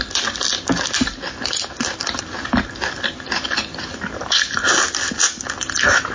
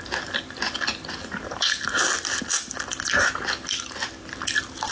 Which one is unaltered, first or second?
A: second